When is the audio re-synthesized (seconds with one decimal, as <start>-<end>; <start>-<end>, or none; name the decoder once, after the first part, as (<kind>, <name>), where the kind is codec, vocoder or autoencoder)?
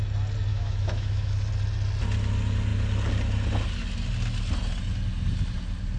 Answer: 0.5-1.3 (autoencoder, DAC-VAE)